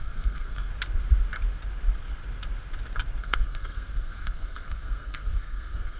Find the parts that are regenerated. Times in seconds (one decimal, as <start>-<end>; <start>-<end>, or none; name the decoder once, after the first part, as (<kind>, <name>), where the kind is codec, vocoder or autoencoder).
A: 0.0-0.7 (codec, SNAC); 3.2-6.0